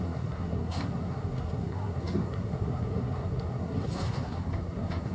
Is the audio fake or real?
fake